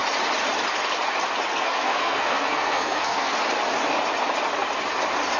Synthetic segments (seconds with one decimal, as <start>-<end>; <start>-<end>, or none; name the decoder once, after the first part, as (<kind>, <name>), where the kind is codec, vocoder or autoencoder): 1.5-3.4 (codec, SNAC)